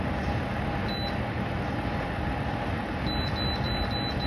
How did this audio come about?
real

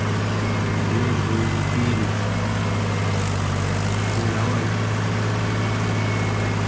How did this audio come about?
real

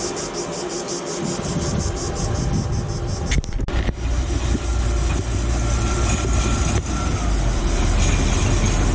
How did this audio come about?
real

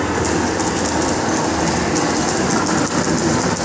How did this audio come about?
real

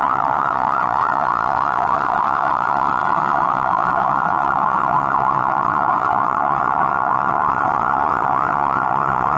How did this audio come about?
fake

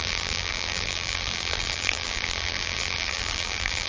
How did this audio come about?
fake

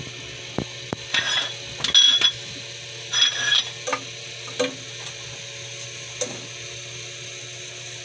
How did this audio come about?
real